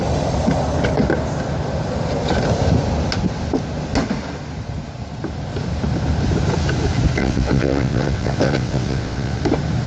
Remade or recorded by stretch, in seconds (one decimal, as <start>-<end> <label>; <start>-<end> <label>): 0.0-7.2 recorded; 7.2-9.4 remade; 9.4-9.9 recorded